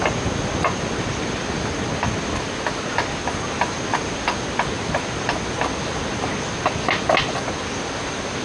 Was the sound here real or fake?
real